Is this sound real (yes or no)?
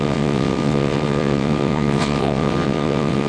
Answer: no